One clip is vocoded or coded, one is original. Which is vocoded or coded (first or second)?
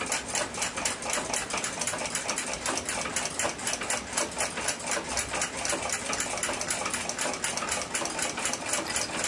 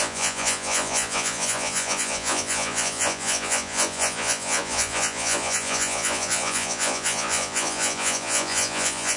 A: second